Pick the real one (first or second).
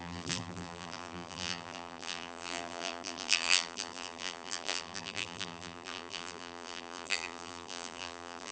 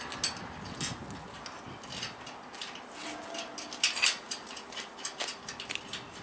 second